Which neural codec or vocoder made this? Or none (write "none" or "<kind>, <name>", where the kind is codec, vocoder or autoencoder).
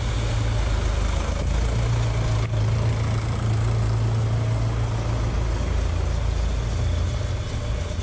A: none